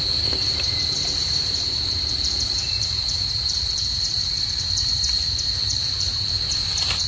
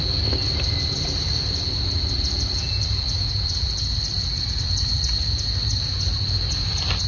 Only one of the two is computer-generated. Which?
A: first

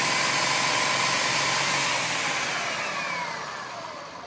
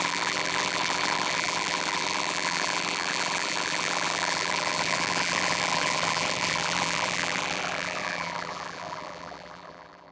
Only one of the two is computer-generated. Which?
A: second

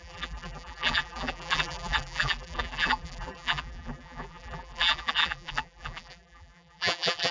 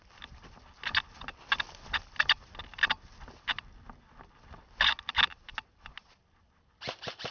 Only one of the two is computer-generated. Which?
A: first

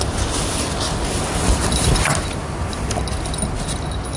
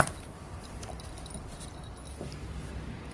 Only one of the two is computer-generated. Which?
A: second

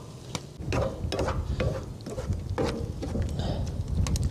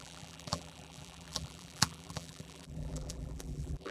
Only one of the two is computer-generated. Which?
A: second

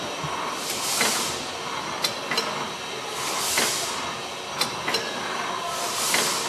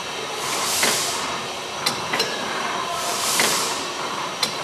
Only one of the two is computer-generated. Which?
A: second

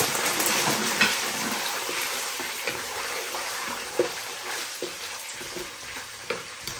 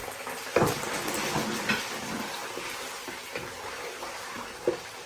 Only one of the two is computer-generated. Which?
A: first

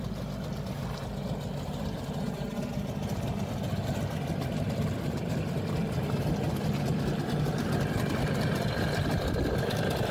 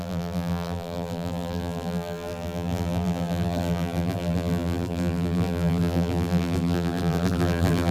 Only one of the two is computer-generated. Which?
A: second